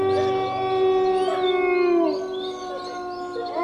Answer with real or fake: real